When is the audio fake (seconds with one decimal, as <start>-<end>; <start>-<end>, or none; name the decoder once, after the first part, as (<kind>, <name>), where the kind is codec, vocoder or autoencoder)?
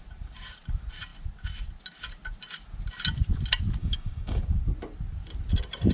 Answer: 3.8-4.4 (codec, DAC)